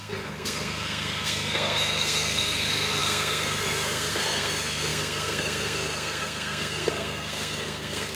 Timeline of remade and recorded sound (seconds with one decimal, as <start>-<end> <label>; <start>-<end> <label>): 0.0-8.2 remade